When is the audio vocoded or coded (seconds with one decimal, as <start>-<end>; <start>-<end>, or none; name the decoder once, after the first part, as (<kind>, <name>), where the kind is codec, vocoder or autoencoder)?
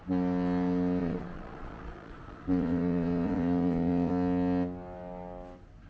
1.0-4.1 (vocoder, Vocos)